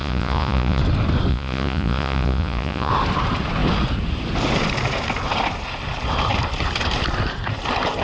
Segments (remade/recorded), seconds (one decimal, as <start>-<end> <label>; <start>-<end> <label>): 0.0-0.8 remade; 0.8-1.3 recorded; 1.3-2.9 remade; 2.9-8.0 recorded